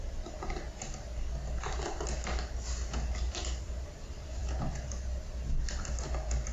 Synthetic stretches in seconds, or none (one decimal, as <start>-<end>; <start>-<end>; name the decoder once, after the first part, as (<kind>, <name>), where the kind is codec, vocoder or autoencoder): none